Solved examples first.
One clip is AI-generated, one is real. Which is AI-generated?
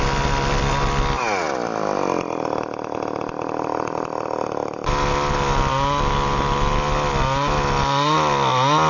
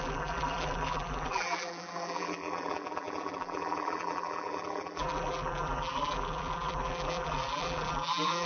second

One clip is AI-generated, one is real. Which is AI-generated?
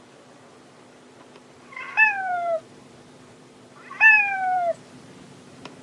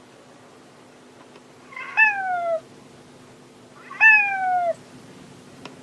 first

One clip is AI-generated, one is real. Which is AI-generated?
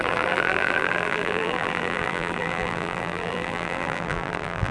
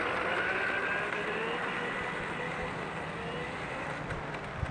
first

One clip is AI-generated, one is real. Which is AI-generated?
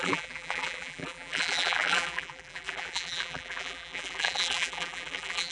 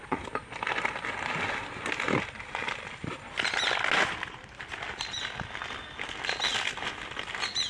first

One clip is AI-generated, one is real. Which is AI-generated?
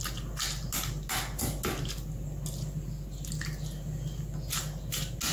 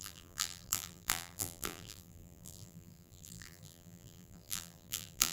second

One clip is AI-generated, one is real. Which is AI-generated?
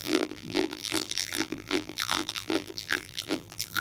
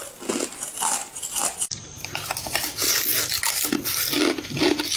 first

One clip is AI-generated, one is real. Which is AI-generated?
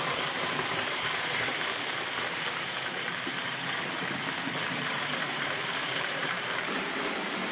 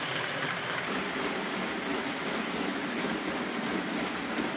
first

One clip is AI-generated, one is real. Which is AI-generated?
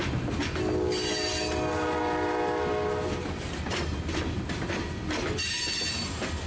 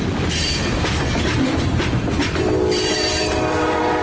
second